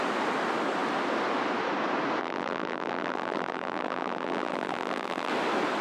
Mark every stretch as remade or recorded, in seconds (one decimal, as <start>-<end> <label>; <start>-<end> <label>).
0.0-2.2 recorded; 2.2-5.3 remade; 5.3-5.8 recorded